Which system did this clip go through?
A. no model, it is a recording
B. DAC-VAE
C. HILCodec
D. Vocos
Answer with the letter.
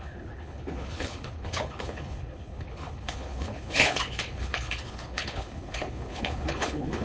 C